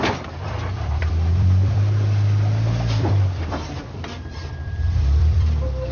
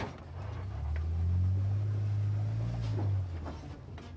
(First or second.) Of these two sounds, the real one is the second